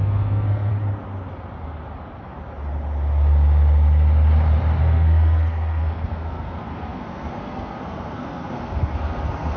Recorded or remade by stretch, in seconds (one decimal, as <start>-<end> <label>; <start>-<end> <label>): 0.0-0.7 remade; 0.7-4.8 recorded; 4.8-9.6 remade